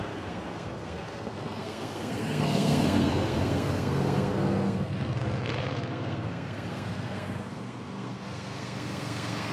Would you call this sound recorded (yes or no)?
no